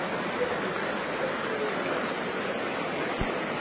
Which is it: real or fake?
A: real